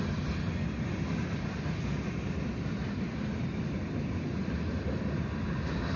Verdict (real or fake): real